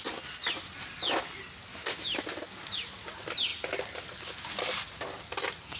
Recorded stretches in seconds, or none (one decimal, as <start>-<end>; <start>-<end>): 0.0-1.7; 2.2-5.8